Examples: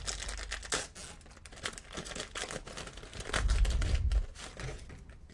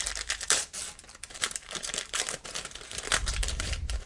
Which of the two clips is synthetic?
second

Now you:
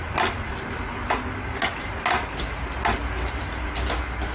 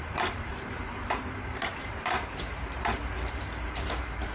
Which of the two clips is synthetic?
second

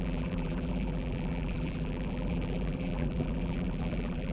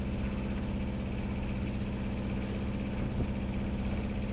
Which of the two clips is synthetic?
first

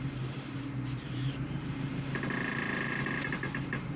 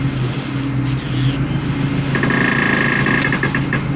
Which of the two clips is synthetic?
first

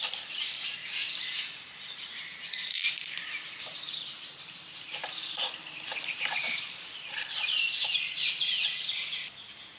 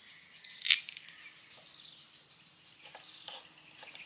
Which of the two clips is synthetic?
first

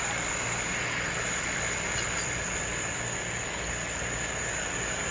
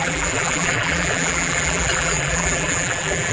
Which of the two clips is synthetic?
second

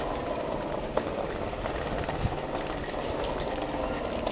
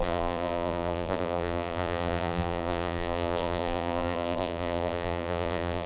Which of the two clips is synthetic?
second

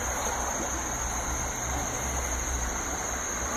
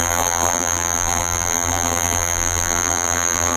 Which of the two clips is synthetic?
second